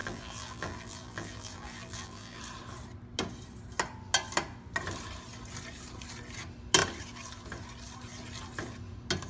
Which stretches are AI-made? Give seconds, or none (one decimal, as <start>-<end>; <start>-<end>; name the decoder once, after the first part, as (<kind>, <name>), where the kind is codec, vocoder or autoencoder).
0.0-2.4 (vocoder, BigVGAN v2)